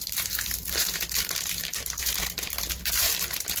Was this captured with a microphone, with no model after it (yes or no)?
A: no